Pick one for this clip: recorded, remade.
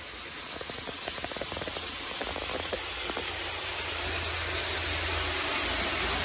recorded